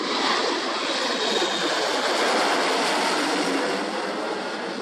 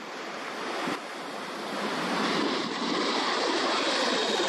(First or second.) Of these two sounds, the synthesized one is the second